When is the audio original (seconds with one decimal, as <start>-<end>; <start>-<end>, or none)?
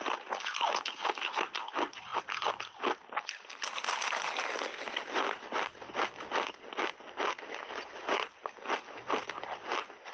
0.0-10.1